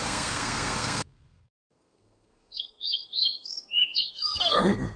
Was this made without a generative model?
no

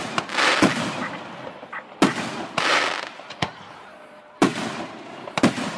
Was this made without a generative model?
yes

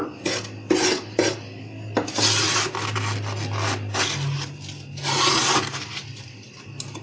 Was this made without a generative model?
yes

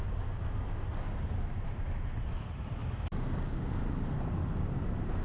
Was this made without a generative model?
yes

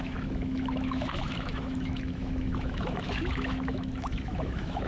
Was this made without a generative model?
no